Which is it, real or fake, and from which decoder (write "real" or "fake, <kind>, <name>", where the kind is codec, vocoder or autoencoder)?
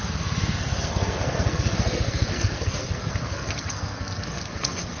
fake, codec, SNAC